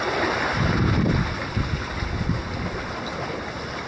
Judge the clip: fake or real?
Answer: real